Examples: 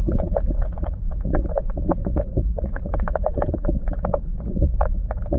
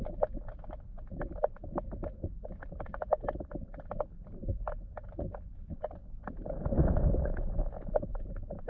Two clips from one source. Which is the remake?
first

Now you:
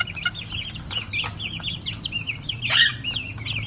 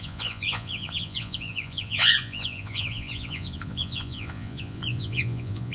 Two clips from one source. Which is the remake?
second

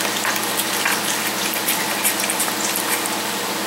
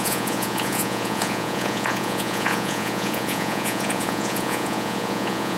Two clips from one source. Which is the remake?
second